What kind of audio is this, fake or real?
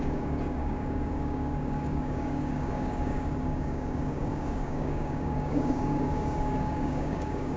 fake